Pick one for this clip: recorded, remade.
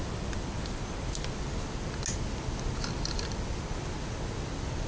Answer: recorded